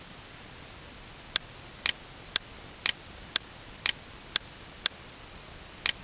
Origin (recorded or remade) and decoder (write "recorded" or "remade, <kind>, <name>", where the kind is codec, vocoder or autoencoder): recorded